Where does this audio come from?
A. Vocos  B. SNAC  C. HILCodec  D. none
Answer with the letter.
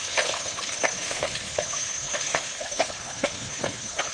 C